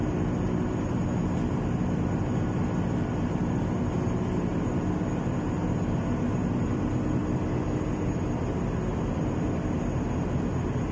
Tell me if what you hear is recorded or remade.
recorded